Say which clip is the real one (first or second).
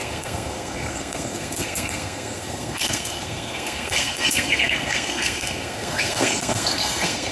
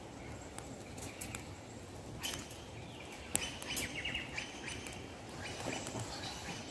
second